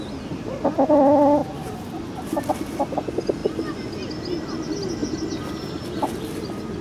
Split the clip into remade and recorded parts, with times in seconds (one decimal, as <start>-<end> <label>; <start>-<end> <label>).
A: 0.0-6.8 recorded